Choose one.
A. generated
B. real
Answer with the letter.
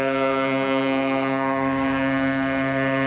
A